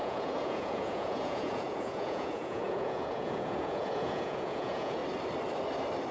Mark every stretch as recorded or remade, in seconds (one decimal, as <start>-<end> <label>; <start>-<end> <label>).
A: 0.0-5.0 remade; 5.0-6.1 recorded